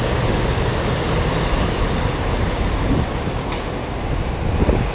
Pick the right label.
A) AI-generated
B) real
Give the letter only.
B